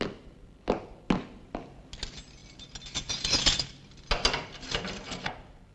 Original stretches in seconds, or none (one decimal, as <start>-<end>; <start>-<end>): 0.0-5.7